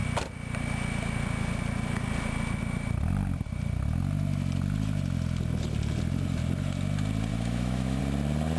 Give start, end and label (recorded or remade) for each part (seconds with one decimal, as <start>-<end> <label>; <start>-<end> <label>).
0.0-7.3 recorded; 7.3-8.0 remade; 8.0-8.6 recorded